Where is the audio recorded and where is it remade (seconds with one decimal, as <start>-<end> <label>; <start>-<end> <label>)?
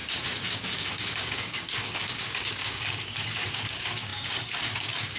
0.0-5.2 remade